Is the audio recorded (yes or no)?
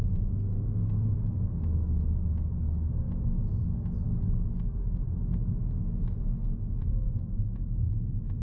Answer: yes